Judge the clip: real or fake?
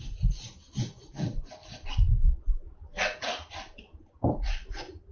real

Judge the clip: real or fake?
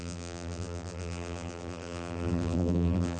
fake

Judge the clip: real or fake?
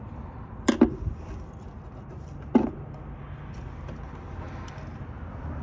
real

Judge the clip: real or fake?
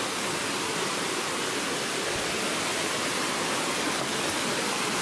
real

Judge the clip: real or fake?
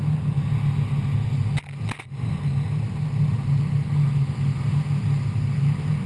real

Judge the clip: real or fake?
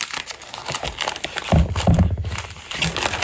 real